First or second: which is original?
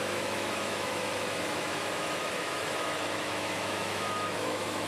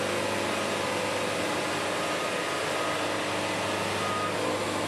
second